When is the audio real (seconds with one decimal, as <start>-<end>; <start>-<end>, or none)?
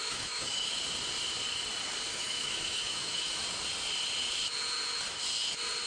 0.7-2.1; 3.4-5.9